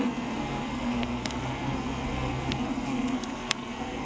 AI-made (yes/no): yes